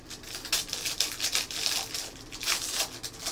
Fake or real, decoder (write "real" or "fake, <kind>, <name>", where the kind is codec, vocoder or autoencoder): real